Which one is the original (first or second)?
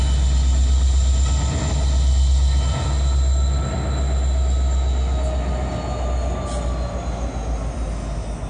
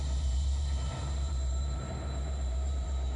first